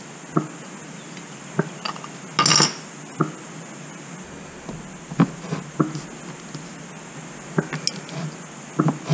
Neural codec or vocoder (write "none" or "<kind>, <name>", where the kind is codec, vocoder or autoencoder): none